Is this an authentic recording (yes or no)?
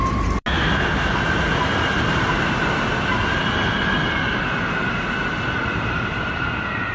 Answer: yes